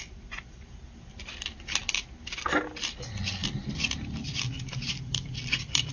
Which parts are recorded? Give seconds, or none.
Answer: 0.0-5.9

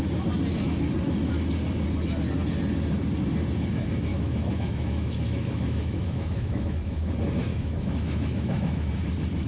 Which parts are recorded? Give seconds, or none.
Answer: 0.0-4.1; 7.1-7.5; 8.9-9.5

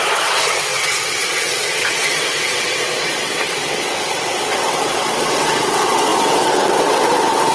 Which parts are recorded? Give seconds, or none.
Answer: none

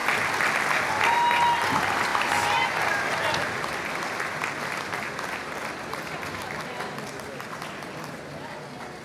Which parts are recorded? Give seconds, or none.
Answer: 0.0-9.0